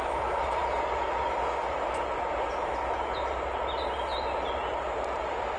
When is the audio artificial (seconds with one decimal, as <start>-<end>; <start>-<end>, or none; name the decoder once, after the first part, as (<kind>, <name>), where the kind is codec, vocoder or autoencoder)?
none